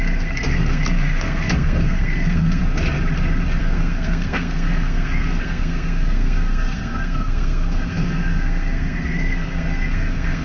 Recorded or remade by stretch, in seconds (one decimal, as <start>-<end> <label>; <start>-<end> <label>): 0.0-2.6 remade; 2.6-3.6 recorded; 3.6-10.4 remade